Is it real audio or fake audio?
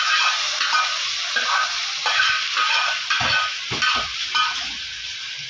real